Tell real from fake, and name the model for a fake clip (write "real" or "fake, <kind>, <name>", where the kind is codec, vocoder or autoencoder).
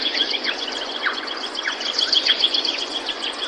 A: fake, vocoder, Vocos